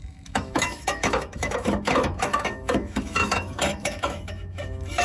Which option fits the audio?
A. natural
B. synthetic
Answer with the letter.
B